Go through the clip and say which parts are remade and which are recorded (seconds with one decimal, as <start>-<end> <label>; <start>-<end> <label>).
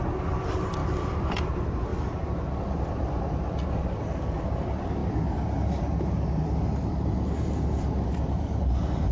0.0-0.8 recorded; 0.8-1.5 remade; 1.5-9.1 recorded